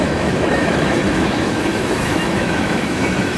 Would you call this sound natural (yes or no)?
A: no